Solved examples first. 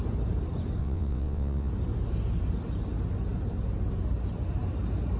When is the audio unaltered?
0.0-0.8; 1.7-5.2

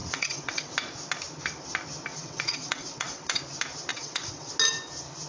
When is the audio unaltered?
0.7-2.1; 3.4-3.9; 4.5-5.3

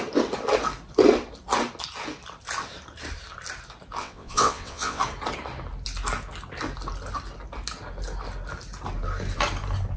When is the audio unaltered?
0.0-4.0; 5.0-10.0

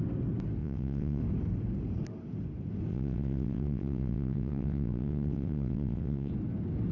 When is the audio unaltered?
0.0-0.6; 1.2-2.9; 6.3-6.9

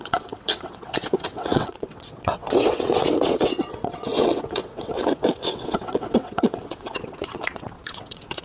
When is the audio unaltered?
none

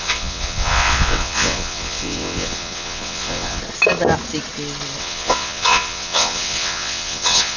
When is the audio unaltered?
3.6-5.0